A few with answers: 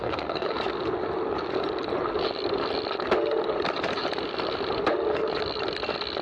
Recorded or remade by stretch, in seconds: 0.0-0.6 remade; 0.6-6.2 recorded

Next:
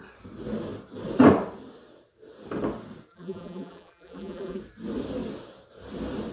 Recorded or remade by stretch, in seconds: 0.0-3.1 recorded; 3.1-4.6 remade; 4.6-6.3 recorded

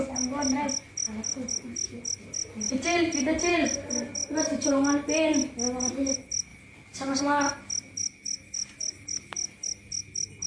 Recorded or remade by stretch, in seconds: 0.0-3.5 recorded; 3.5-4.7 remade; 4.7-6.5 recorded; 6.5-7.2 remade; 7.2-8.0 recorded; 8.0-10.0 remade; 10.0-10.5 recorded

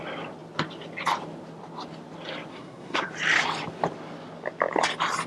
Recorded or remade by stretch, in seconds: 0.0-2.5 recorded; 2.5-3.1 remade; 3.1-5.3 recorded

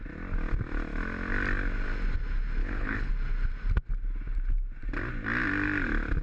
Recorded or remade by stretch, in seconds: 0.0-2.6 recorded; 2.6-3.1 remade; 3.1-6.2 recorded

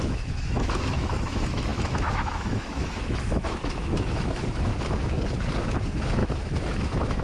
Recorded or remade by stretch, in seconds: 0.0-4.7 remade; 4.7-5.8 recorded; 5.8-7.2 remade

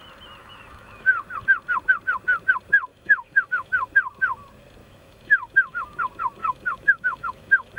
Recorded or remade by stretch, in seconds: 0.0-0.4 recorded; 0.4-1.1 remade; 1.1-2.9 recorded; 2.9-3.7 remade; 3.7-4.8 recorded; 4.8-6.0 remade; 6.0-6.4 recorded; 6.4-7.8 remade

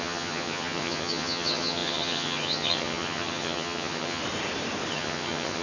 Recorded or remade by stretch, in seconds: 0.0-4.2 remade; 4.2-4.9 recorded; 4.9-5.6 remade